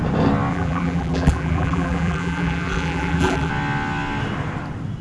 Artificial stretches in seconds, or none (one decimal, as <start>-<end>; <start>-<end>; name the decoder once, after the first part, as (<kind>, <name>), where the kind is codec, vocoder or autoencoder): 0.5-3.5 (vocoder, BigVGAN v2)